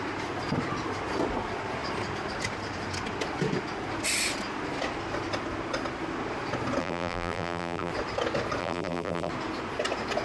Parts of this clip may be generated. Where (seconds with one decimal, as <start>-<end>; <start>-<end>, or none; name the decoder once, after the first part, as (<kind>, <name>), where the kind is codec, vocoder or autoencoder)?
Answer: 6.8-7.9 (vocoder, BigVGAN v2); 8.6-9.3